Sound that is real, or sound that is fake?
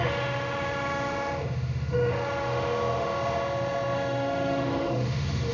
fake